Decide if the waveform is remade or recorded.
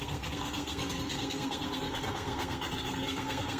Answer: remade